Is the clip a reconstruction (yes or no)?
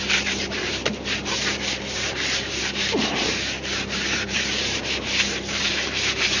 yes